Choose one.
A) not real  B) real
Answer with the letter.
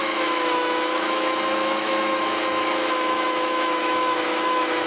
A